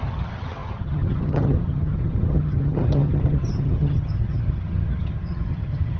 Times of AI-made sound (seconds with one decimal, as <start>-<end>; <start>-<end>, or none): 0.0-6.0